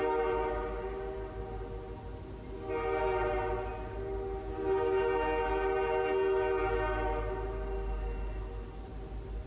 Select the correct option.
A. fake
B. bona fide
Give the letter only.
B